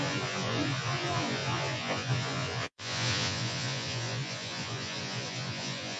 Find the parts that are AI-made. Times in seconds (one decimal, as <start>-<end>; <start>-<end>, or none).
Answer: 0.0-6.0